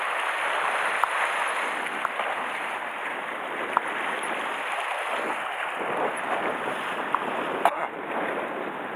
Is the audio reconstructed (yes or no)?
no